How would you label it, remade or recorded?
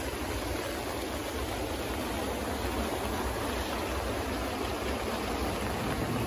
recorded